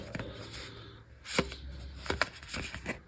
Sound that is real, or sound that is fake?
real